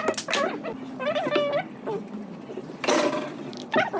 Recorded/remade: recorded